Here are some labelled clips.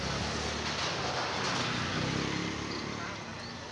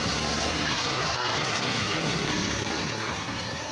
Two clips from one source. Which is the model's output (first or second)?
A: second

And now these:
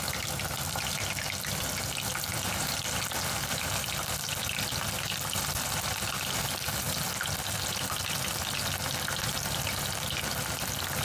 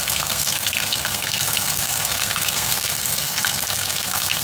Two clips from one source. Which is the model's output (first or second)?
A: second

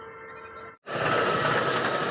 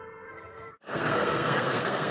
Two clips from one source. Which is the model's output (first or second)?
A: second